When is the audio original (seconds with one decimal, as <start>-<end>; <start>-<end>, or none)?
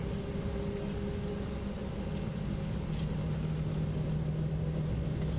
0.0-5.4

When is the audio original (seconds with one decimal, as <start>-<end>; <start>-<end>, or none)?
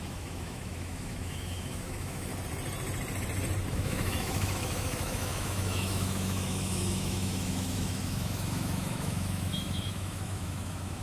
2.3-3.7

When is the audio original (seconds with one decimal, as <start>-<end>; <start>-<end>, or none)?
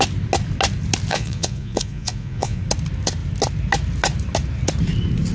0.0-1.1; 2.6-5.3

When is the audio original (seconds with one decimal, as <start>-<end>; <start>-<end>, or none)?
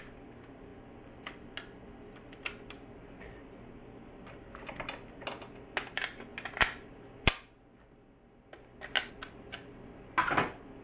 0.0-10.8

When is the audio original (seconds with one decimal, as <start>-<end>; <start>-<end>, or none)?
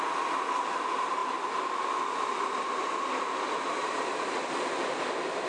0.0-5.5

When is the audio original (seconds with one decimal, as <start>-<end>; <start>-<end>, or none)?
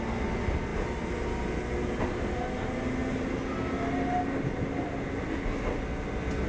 0.0-6.5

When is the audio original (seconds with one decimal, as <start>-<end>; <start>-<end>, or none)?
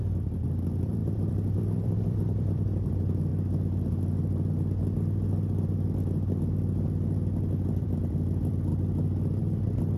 3.3-7.7; 8.7-9.4